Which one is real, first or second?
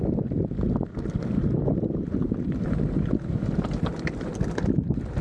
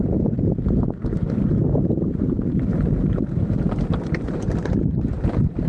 first